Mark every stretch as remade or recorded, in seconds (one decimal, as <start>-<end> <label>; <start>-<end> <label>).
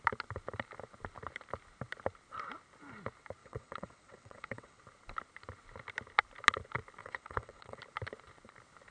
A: 0.0-3.4 recorded; 3.4-4.8 remade; 4.8-7.0 recorded; 7.0-7.8 remade; 7.8-8.9 recorded